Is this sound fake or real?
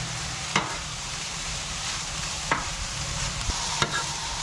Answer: fake